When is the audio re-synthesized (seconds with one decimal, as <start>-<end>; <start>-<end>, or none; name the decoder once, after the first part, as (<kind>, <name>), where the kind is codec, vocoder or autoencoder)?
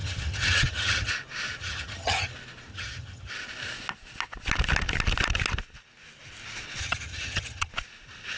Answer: 0.0-1.1 (vocoder, HiFi-GAN); 1.6-2.3; 2.7-3.3; 6.8-7.7